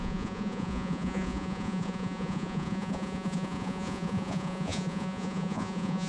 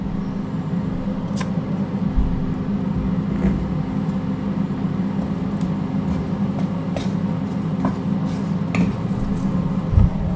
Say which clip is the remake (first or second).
first